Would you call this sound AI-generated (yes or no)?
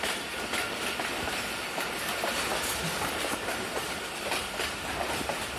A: no